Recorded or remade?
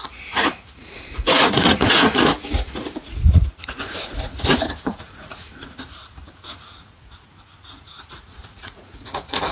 remade